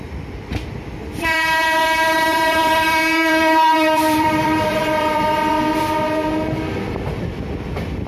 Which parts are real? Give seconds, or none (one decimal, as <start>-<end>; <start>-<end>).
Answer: 0.0-1.0; 5.5-8.1